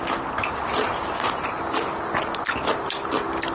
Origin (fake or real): real